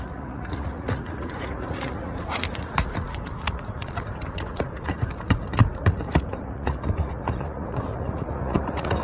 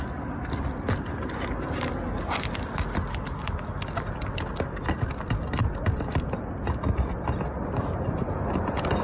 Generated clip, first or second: first